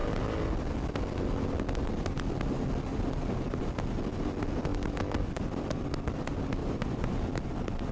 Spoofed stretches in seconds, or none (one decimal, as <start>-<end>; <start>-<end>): 6.6-7.1